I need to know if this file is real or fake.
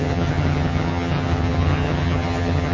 fake